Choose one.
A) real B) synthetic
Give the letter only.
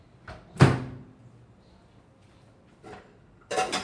A